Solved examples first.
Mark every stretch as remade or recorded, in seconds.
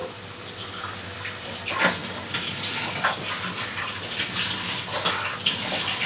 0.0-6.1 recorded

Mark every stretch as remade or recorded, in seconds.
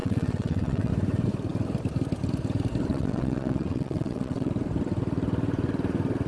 0.0-0.9 remade; 0.9-2.9 recorded; 2.9-4.5 remade; 4.5-6.3 recorded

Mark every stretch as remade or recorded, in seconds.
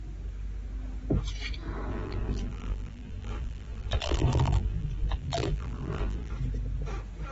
0.0-1.9 recorded; 1.9-6.3 remade; 6.3-7.3 recorded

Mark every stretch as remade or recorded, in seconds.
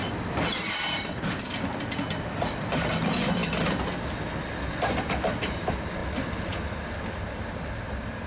0.0-8.3 recorded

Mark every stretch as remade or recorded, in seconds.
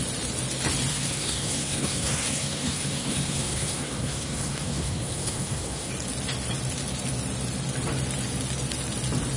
0.0-0.9 recorded; 0.9-5.9 remade; 5.9-9.4 recorded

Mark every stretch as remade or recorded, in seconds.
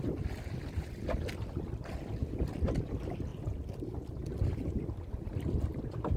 0.0-6.2 recorded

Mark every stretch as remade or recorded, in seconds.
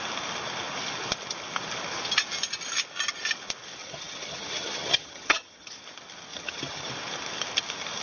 0.0-3.8 recorded; 3.8-5.7 remade; 5.7-6.3 recorded; 6.3-6.9 remade; 6.9-8.0 recorded